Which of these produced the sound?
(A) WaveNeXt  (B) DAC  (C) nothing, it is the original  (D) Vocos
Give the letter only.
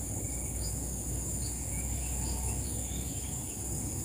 B